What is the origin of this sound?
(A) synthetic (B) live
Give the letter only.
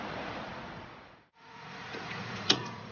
A